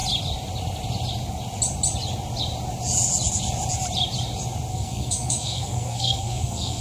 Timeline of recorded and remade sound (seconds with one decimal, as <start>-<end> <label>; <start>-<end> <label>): 0.0-4.7 recorded; 4.7-6.8 remade